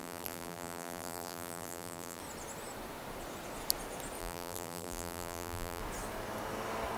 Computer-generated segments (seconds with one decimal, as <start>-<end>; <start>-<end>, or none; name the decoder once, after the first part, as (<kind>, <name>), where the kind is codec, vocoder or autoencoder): 0.0-2.2 (vocoder, BigVGAN v2); 4.2-5.8